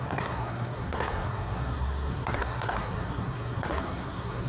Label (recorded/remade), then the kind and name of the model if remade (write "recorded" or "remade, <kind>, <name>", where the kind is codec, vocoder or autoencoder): remade, codec, SNAC